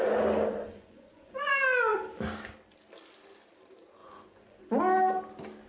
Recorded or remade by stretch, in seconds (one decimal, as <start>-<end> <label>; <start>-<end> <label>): 0.0-0.6 recorded; 0.6-1.5 remade; 1.5-4.0 recorded; 4.0-4.8 remade; 4.8-5.7 recorded